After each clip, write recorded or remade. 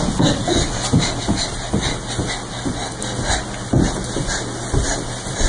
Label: recorded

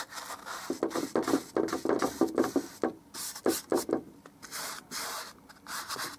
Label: recorded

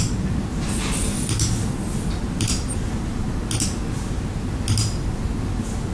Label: recorded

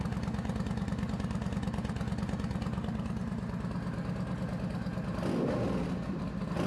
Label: recorded